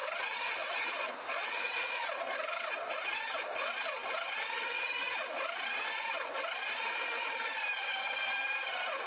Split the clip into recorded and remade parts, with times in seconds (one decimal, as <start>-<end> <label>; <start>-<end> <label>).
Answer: 0.0-9.1 recorded